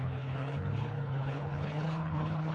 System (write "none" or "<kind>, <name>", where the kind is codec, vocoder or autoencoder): codec, HILCodec